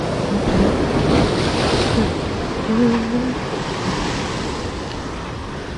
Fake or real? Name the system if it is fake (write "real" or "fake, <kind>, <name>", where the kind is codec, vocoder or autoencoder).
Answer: real